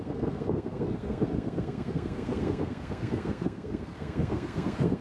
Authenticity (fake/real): fake